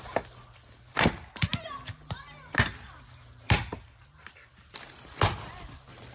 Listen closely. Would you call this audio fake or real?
real